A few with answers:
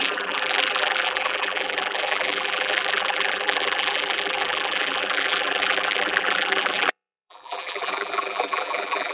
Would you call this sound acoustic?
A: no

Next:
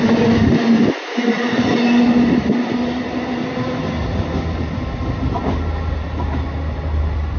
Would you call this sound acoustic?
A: yes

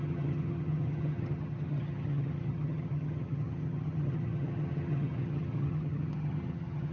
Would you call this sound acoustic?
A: no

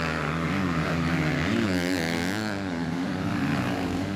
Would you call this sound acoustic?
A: no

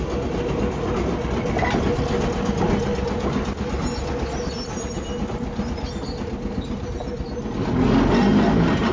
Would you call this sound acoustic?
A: yes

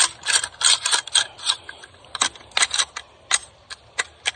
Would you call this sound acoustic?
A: yes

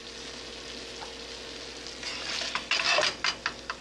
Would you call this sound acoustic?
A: yes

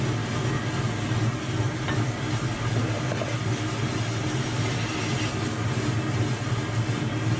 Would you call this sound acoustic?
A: yes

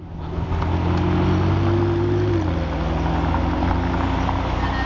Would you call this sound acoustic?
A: yes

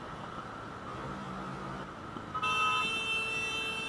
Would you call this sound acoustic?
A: yes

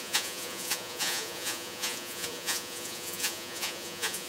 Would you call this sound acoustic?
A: no